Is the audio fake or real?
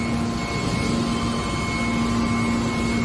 real